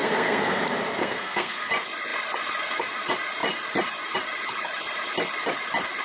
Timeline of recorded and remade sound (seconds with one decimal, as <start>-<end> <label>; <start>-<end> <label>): 0.0-0.6 remade; 0.6-1.0 recorded; 1.0-1.7 remade; 1.7-6.0 recorded

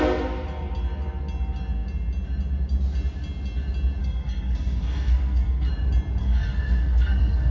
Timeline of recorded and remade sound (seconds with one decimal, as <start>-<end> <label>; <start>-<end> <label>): 0.0-4.0 recorded; 4.0-5.7 remade; 5.7-6.2 recorded; 6.2-7.5 remade